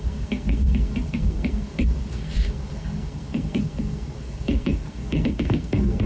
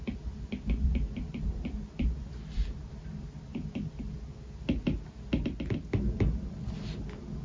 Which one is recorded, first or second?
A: second